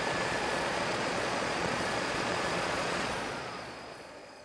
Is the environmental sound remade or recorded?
remade